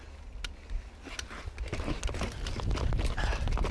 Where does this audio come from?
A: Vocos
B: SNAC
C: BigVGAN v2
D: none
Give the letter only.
D